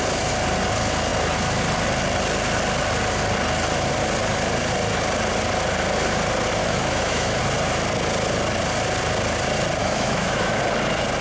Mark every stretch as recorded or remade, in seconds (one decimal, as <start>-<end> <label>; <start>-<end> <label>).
0.0-6.6 recorded; 6.6-7.4 remade; 7.4-9.8 recorded; 9.8-10.6 remade; 10.6-11.2 recorded